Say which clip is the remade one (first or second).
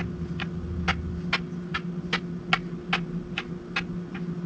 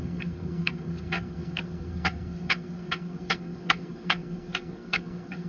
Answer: second